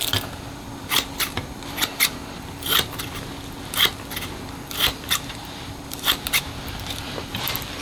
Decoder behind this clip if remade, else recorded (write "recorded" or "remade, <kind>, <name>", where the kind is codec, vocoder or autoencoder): remade, vocoder, BigVGAN v2